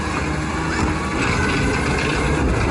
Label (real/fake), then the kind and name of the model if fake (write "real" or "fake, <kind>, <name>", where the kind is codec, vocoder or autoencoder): real